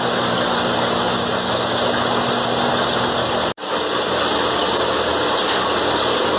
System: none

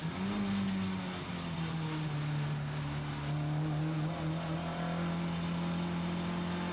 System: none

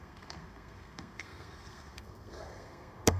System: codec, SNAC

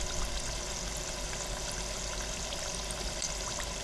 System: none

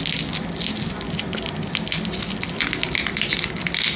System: none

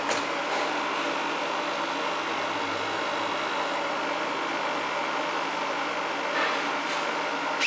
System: none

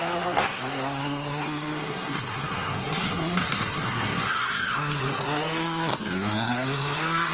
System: codec, SNAC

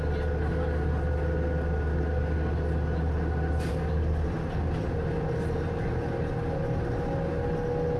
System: none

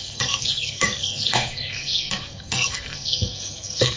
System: codec, SNAC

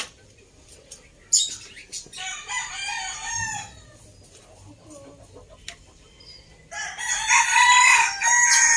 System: none